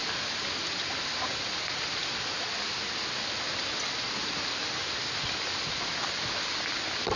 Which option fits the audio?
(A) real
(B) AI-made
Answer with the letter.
A